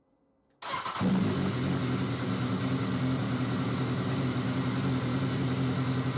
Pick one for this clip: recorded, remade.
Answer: recorded